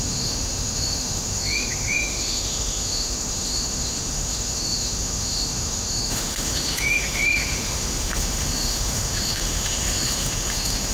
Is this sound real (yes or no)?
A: no